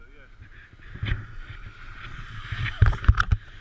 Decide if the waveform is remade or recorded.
recorded